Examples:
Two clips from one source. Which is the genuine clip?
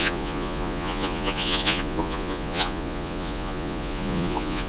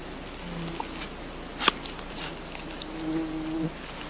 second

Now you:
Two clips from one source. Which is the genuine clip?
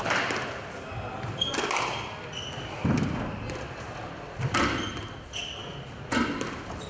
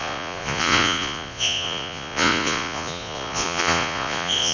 first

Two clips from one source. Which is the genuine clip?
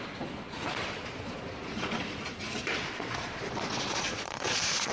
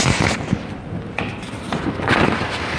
second